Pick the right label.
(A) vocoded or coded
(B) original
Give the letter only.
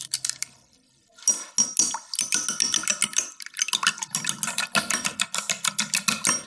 B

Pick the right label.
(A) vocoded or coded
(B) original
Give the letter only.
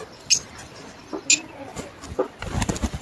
B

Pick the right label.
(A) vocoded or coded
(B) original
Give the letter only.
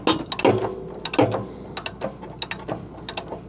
B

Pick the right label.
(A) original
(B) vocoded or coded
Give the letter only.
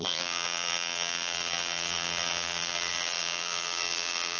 B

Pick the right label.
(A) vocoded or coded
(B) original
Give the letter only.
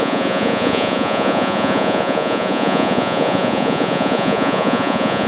A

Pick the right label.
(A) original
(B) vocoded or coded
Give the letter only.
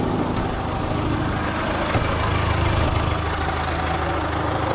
A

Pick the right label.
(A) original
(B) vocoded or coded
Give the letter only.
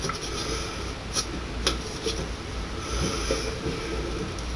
A